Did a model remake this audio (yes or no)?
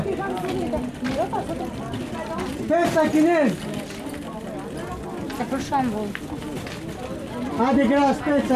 no